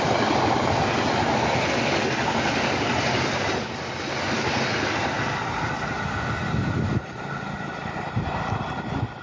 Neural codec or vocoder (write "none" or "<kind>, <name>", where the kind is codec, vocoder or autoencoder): none